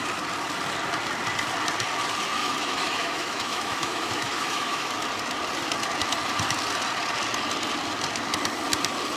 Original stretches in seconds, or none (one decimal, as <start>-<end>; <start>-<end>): 0.0-2.4; 4.9-9.2